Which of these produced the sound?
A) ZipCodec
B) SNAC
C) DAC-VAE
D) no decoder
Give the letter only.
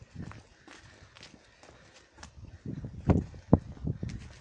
D